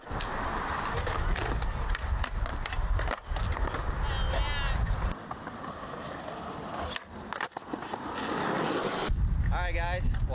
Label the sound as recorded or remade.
recorded